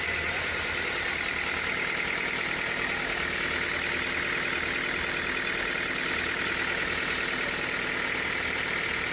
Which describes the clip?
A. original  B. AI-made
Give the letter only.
A